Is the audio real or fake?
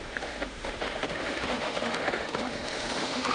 fake